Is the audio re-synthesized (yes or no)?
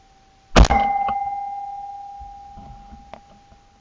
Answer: no